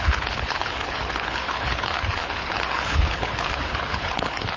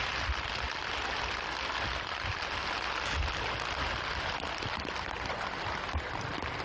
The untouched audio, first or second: second